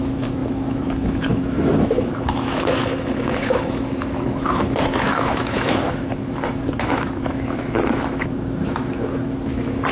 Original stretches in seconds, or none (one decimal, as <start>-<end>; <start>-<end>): none